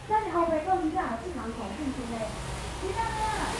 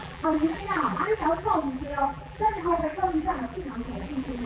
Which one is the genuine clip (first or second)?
first